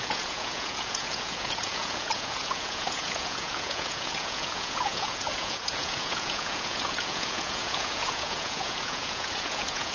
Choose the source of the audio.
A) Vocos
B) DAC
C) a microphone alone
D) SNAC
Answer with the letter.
A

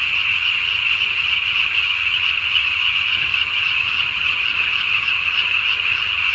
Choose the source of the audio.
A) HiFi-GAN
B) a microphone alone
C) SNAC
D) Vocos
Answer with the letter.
A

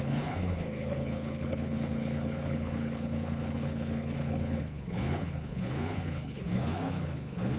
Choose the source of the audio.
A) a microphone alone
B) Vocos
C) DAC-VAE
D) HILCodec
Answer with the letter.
D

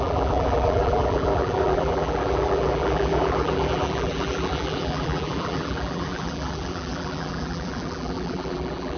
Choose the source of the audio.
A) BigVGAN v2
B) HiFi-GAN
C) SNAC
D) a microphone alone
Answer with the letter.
A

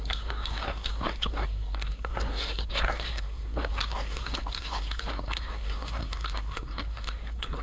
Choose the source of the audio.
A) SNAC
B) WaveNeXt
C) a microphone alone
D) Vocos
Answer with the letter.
A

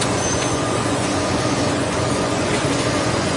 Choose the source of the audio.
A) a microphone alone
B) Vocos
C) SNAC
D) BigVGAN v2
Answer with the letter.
B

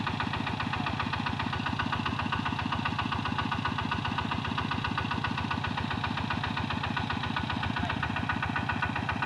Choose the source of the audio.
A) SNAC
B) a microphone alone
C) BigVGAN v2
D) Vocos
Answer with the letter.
B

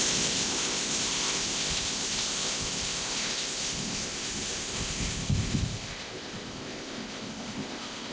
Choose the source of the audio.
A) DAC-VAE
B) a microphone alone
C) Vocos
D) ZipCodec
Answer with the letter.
D